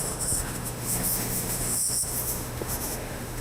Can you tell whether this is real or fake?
fake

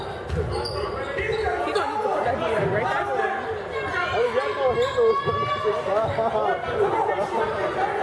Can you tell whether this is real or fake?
real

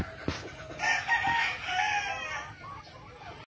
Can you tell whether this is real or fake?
real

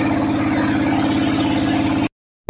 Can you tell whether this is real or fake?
real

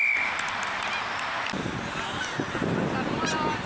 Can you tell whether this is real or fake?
real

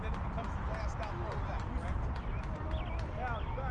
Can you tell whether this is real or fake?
real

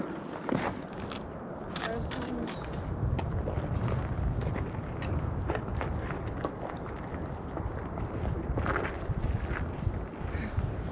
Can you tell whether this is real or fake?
real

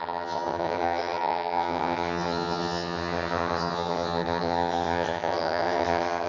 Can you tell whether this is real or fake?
fake